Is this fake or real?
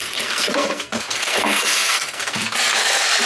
fake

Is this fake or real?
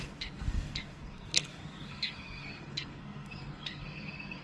fake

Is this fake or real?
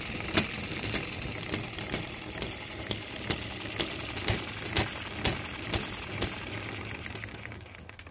real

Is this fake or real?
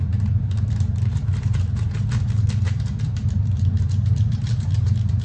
fake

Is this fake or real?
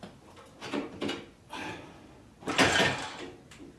real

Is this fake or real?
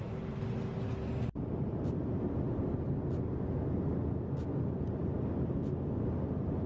real